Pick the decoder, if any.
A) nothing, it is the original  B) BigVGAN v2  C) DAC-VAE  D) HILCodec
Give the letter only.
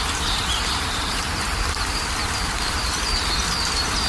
B